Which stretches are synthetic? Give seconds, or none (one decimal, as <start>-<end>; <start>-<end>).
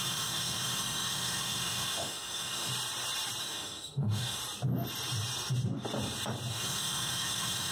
0.0-2.7; 3.4-4.4; 6.5-7.7